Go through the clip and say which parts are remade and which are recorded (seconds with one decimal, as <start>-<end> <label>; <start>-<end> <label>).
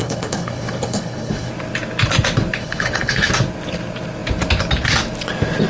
0.0-1.5 remade; 1.5-2.6 recorded; 2.6-3.3 remade; 3.3-5.7 recorded